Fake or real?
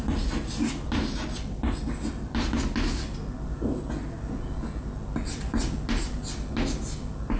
real